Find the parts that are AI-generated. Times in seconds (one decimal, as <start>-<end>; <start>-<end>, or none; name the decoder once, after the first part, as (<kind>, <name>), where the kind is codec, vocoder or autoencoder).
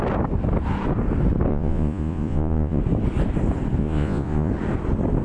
1.5-2.8 (vocoder, Vocos); 3.8-4.5